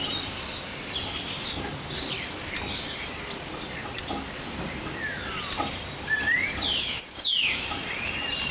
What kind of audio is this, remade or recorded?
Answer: recorded